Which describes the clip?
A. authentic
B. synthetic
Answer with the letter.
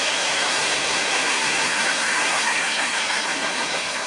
B